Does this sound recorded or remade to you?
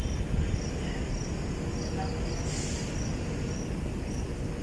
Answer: recorded